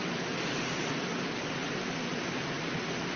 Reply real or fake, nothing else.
real